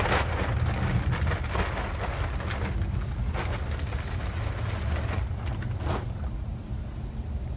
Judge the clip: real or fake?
real